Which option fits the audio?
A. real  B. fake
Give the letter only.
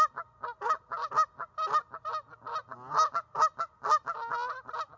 A